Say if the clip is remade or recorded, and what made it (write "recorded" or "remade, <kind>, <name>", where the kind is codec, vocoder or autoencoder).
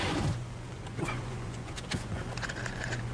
remade, vocoder, Vocos